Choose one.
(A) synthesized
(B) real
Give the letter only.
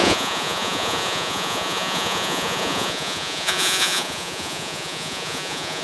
A